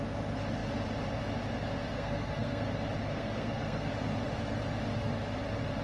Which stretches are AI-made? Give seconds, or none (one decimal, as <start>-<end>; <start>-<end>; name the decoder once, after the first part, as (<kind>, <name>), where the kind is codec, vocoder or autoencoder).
1.8-2.6 (codec, SNAC); 3.0-3.9